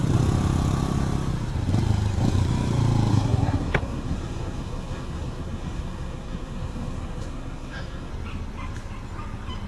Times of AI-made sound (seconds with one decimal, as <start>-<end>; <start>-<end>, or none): 3.1-8.1